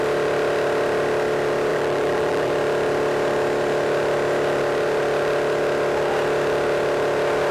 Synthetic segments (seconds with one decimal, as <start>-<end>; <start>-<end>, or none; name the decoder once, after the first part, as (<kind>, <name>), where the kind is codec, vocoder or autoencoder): 1.7-2.5 (vocoder, BigVGAN v2)